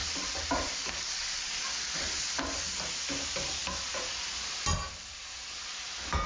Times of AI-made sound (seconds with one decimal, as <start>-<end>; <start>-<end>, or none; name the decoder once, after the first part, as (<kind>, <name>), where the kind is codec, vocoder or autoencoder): none